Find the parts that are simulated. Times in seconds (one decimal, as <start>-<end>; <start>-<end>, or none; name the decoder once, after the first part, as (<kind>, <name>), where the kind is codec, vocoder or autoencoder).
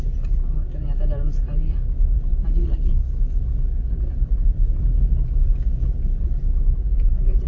2.6-3.1 (codec, HILCodec)